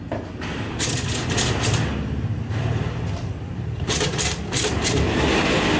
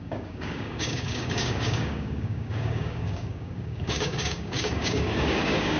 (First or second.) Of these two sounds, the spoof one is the second